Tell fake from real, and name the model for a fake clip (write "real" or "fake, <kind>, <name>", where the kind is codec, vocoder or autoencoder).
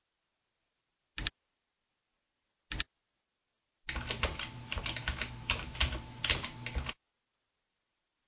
real